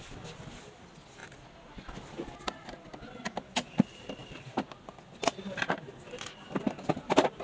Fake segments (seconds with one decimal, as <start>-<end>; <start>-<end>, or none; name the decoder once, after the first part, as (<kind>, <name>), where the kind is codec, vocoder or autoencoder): none